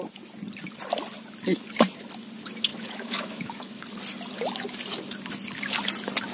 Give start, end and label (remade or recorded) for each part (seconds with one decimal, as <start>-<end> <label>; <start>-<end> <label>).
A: 0.0-2.7 recorded; 2.7-3.8 remade; 3.8-6.3 recorded